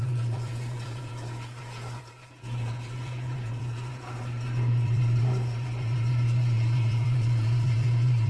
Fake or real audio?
fake